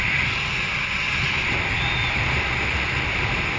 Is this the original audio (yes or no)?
yes